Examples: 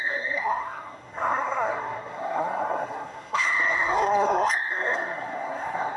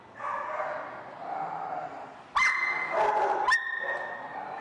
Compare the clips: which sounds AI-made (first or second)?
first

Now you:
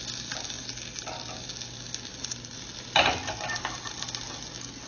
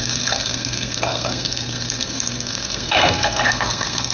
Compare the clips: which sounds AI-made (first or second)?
second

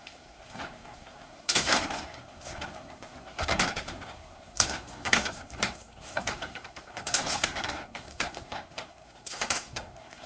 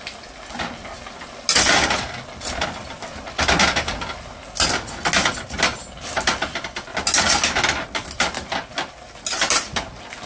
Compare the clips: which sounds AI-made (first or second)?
first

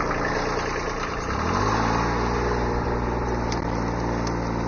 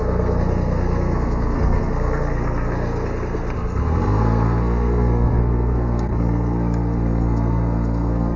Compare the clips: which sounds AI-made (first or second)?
second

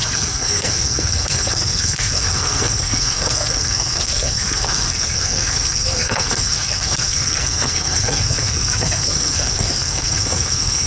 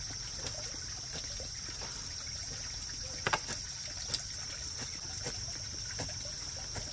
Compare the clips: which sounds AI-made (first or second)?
first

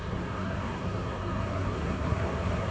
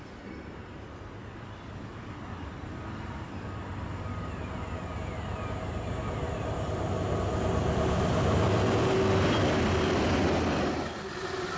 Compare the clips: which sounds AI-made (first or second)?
first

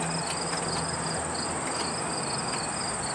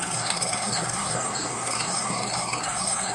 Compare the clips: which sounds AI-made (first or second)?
second